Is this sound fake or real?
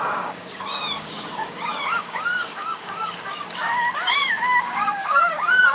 fake